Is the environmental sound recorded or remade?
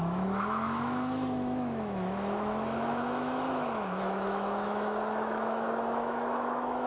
remade